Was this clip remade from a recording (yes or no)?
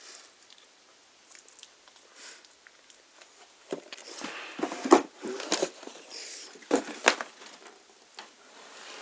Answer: no